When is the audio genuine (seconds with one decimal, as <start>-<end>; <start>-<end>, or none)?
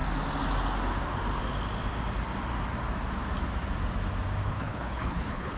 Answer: 0.0-4.4